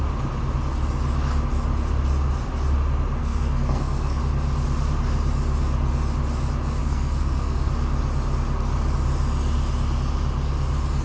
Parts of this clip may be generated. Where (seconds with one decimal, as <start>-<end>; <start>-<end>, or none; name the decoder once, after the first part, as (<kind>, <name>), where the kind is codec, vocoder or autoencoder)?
3.2-4.2 (codec, SNAC); 6.8-7.7